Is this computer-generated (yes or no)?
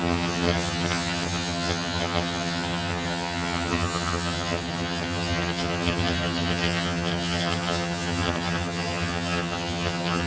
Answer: yes